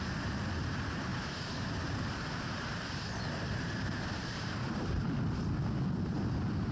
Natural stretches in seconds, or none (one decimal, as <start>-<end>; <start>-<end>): 0.0-1.1; 5.1-6.7